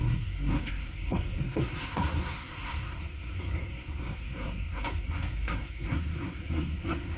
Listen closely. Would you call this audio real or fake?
fake